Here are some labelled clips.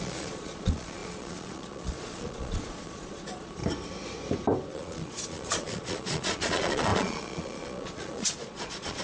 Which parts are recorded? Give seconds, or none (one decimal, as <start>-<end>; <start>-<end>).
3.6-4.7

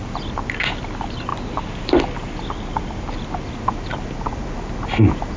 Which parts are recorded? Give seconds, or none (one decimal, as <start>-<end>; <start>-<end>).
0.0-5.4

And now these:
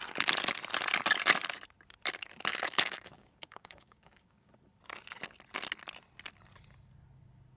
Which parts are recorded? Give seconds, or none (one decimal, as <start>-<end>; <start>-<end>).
0.0-2.5; 4.5-7.6

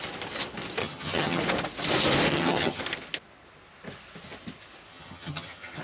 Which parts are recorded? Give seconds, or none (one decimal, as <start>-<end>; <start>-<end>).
0.0-0.8; 1.4-2.3; 2.8-4.9